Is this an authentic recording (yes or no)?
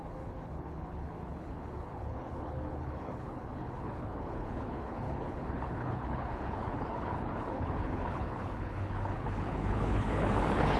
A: no